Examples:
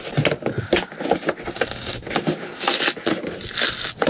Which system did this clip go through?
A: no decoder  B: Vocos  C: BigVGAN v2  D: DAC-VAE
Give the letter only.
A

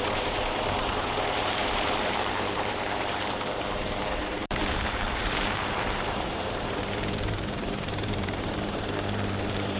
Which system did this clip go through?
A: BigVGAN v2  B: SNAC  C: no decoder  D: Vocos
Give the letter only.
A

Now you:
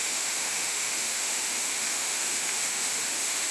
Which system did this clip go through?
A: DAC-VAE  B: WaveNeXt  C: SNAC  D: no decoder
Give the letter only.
A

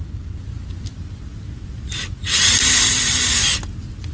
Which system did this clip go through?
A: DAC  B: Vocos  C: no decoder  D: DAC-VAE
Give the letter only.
C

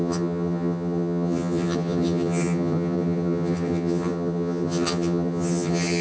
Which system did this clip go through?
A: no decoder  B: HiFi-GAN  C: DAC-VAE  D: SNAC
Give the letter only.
B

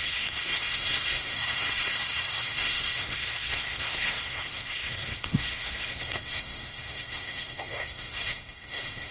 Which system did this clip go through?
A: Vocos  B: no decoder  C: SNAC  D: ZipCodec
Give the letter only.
C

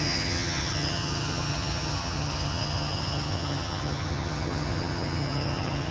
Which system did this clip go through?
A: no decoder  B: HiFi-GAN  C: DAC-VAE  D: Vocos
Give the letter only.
B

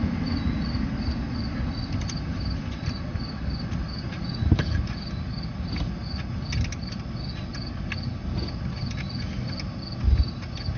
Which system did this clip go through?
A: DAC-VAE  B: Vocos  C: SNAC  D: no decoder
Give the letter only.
D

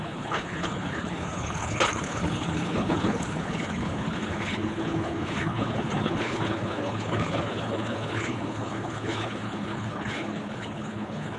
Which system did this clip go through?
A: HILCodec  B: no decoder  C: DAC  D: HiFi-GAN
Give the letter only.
A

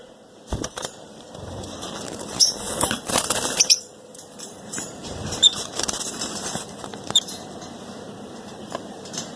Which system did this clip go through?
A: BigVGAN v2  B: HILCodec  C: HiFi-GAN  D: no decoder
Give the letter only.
A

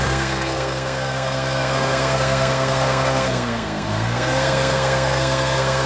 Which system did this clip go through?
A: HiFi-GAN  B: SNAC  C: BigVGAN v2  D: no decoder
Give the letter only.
B